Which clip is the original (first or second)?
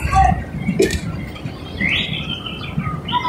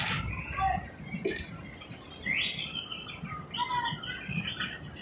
second